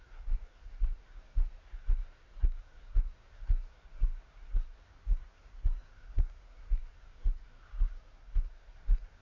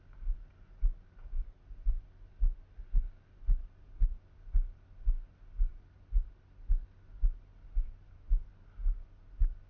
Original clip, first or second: second